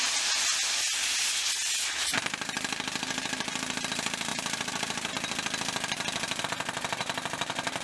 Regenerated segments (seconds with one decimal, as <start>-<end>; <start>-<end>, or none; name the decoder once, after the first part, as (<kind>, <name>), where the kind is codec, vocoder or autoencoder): 4.3-5.1 (vocoder, BigVGAN v2)